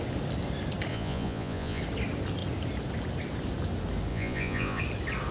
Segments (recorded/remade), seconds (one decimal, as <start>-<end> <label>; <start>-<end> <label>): 0.0-0.9 recorded; 0.9-1.8 remade; 1.8-4.1 recorded; 4.1-4.8 remade; 4.8-5.3 recorded